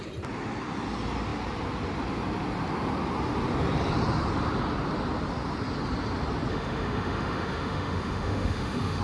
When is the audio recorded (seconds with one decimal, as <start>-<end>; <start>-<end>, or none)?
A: 0.0-6.5